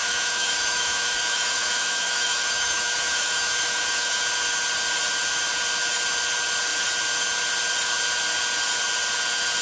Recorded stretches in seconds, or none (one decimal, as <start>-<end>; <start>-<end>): 4.2-9.6